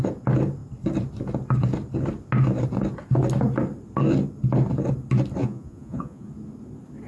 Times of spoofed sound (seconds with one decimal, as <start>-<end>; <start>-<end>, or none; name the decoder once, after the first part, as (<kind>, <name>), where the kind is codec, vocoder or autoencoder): 5.4-6.3 (vocoder, Vocos)